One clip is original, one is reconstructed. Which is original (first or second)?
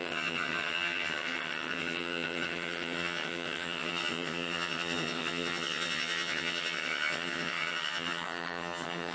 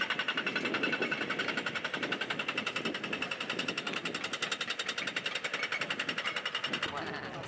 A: second